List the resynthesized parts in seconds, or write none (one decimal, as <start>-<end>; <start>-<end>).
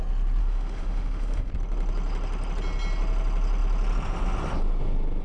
0.4-1.5